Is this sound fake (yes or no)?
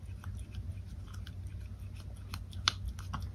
no